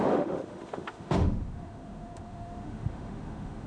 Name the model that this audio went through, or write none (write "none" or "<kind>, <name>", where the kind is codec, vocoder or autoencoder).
autoencoder, DAC-VAE